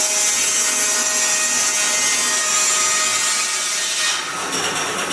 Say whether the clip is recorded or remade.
recorded